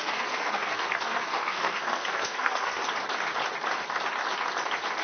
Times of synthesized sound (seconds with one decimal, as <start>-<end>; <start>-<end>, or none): 0.0-2.8